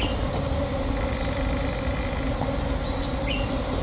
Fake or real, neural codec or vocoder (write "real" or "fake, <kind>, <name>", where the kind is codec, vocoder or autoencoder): real